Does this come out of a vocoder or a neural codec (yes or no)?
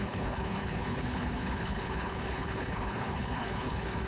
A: yes